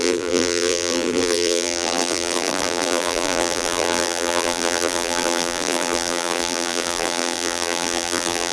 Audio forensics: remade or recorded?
remade